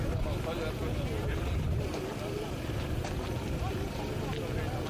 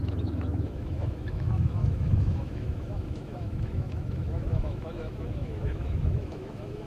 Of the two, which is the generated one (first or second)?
second